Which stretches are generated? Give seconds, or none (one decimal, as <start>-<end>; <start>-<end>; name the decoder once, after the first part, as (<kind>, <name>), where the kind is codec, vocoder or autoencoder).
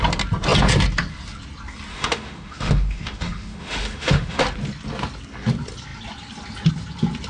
1.9-4.4 (autoencoder, DAC-VAE)